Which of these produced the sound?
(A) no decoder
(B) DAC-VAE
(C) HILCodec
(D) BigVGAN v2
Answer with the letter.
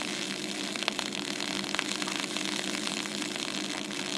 A